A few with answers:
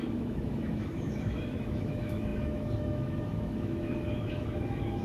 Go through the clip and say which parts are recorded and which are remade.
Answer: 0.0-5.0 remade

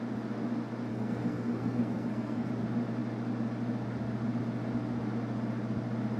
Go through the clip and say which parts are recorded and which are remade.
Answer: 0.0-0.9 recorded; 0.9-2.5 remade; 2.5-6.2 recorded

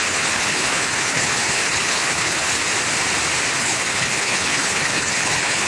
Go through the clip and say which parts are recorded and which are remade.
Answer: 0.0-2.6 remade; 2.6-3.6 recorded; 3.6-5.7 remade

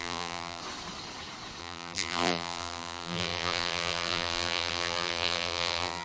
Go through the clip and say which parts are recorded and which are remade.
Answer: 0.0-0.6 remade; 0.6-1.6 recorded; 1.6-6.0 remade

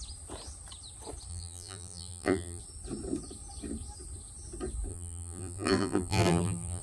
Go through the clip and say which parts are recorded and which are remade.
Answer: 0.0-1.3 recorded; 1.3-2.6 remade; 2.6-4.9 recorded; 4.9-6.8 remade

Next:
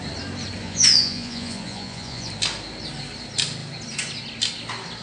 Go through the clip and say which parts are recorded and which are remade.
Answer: 0.0-0.6 recorded; 0.6-2.3 remade; 2.3-5.0 recorded